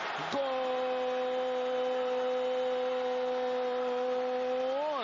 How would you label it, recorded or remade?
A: recorded